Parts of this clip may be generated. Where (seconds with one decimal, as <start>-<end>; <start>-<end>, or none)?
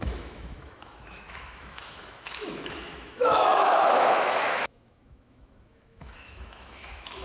0.0-7.2